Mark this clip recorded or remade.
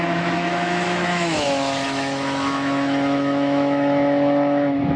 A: remade